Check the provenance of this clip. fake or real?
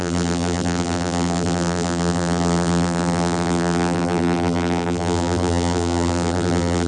fake